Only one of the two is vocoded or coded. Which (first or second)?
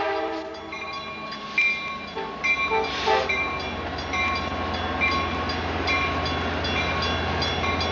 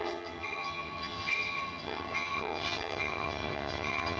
second